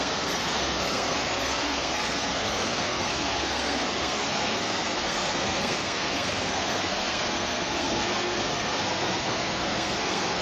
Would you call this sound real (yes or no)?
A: no